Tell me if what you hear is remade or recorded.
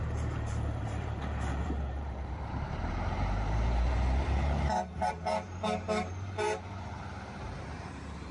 remade